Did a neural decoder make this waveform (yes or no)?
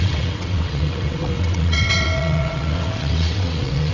yes